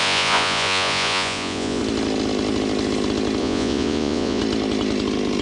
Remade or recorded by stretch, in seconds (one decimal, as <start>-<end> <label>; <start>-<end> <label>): 0.0-1.8 remade; 1.8-3.4 recorded; 3.4-4.4 remade; 4.4-5.4 recorded